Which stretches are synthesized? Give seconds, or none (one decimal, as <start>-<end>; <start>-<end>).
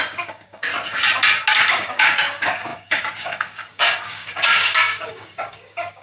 0.0-0.7; 1.5-6.0